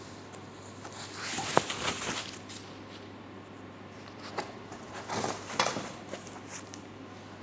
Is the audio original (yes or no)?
yes